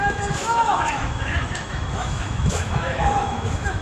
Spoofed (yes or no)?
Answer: yes